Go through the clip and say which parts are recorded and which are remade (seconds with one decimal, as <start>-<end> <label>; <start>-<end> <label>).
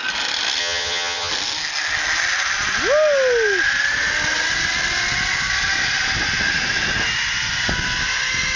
0.0-0.6 recorded; 0.6-1.3 remade; 1.3-8.6 recorded